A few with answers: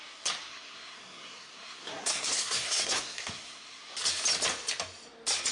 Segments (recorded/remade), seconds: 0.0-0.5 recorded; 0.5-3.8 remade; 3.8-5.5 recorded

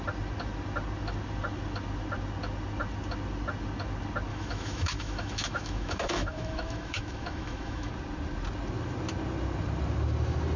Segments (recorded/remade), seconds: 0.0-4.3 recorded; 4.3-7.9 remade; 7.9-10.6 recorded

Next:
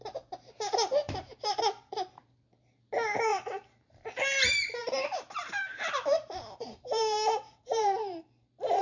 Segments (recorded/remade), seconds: 0.0-1.0 recorded; 1.0-1.6 remade; 1.6-3.3 recorded; 3.3-8.8 remade